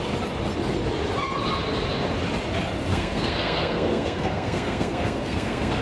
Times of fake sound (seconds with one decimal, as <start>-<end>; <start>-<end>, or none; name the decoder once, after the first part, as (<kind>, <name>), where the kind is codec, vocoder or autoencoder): 2.9-5.8 (codec, SNAC)